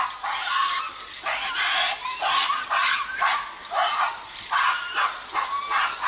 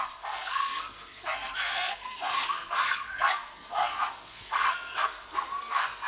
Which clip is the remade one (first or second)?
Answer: second